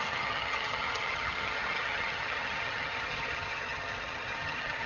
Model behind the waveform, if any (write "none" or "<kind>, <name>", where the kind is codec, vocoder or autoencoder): vocoder, HiFi-GAN